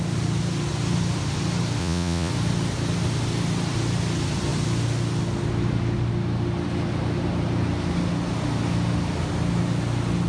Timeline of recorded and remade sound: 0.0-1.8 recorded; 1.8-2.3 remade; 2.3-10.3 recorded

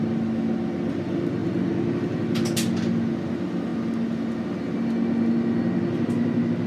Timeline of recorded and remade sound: 0.0-6.7 recorded

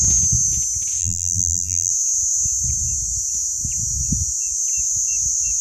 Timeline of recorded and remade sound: 0.0-1.0 recorded; 1.0-1.9 remade; 1.9-5.6 recorded

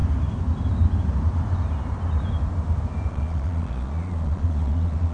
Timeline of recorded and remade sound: 0.0-3.1 recorded; 3.1-5.1 remade

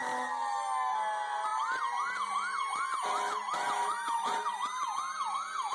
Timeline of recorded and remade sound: 0.0-5.7 recorded

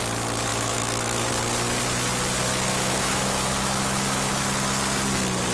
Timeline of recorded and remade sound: 0.0-0.5 recorded; 0.5-1.3 remade; 1.3-2.7 recorded; 2.7-4.4 remade; 4.4-5.5 recorded